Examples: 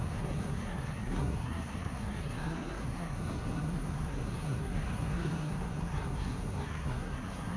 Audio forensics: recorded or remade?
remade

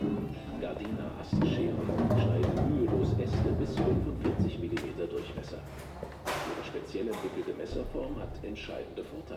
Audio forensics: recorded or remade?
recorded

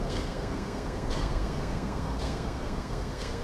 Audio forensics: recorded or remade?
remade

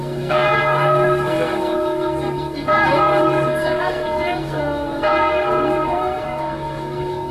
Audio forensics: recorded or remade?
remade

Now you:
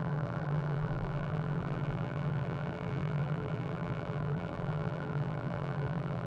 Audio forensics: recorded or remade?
remade